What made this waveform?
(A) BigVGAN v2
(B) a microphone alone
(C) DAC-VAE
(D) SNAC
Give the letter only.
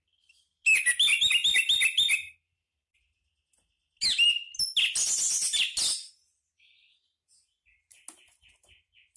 B